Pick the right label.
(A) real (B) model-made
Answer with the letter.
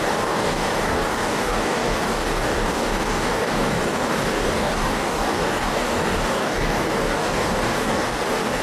B